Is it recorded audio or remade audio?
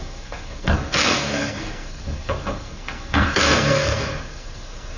remade